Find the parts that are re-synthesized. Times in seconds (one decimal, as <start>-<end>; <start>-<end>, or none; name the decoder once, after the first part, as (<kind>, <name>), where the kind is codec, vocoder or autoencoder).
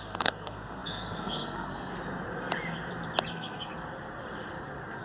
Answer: 0.0-1.9 (codec, SNAC); 3.3-3.7